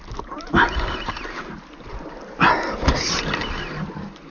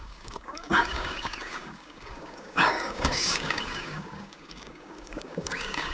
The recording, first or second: first